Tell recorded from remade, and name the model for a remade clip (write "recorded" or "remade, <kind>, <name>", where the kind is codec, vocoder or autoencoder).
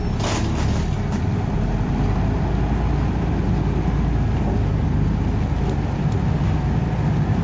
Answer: recorded